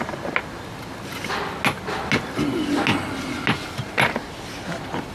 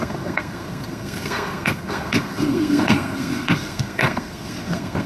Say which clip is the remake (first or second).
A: second